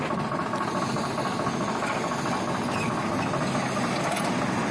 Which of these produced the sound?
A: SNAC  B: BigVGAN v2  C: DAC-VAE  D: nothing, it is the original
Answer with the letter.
D